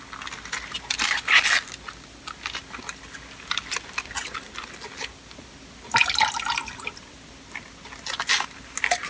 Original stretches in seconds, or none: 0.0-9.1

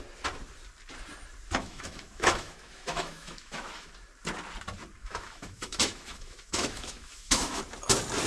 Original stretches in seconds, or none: 0.0-1.6; 3.9-5.0; 7.6-8.3

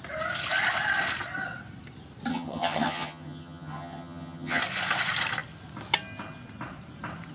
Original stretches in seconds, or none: 0.0-2.3; 4.6-7.3

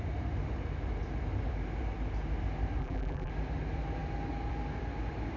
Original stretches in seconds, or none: 0.0-2.8; 3.3-5.4

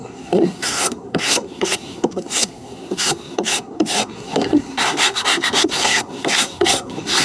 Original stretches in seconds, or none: none